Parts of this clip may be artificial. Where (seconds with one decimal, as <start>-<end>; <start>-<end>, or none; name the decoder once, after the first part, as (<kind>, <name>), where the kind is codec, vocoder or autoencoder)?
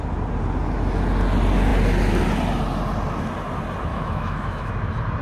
3.9-4.7 (autoencoder, DAC-VAE)